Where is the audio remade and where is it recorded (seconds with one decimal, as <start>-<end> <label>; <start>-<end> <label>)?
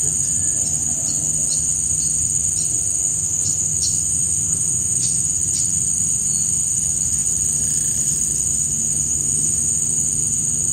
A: 0.0-3.1 recorded; 3.1-5.2 remade; 5.2-8.5 recorded; 8.5-9.8 remade; 9.8-10.7 recorded